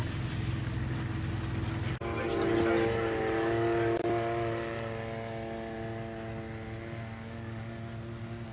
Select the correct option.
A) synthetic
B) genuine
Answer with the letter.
B